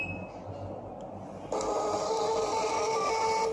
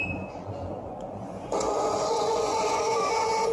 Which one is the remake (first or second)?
second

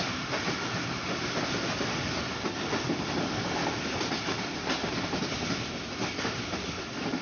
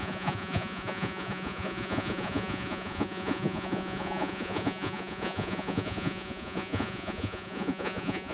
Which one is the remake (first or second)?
second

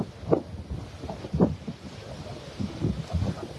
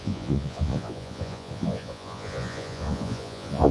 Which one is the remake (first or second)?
second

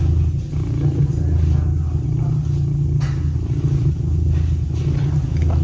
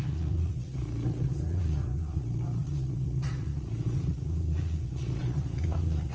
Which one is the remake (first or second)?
second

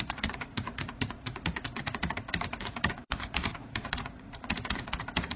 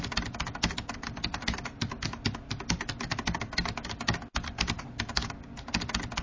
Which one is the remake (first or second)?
first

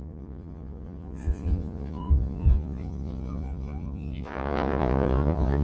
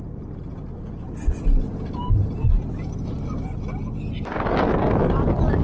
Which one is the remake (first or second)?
first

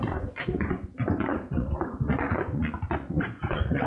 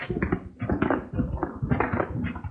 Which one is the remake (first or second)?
first